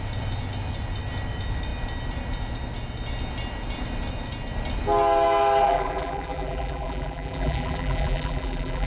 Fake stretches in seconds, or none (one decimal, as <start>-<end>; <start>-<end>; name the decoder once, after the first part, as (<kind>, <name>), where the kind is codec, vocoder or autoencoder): 5.6-8.9 (vocoder, BigVGAN v2)